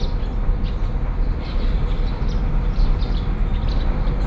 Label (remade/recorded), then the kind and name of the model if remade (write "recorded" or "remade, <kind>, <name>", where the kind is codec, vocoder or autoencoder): recorded